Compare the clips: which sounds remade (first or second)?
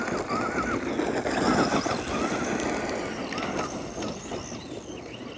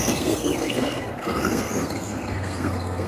second